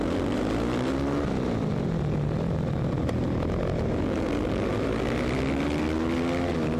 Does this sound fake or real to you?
real